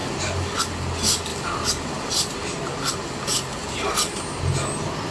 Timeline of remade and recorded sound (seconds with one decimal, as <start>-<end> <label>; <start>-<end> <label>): 0.0-5.1 recorded